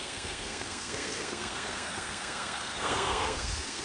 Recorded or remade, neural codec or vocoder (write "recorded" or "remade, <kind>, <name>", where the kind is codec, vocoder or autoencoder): remade, codec, SNAC